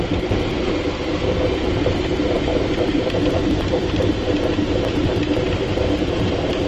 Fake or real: real